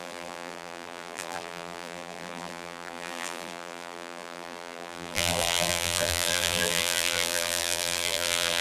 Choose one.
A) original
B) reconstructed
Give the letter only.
B